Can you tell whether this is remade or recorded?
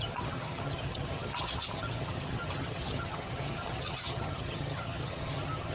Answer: remade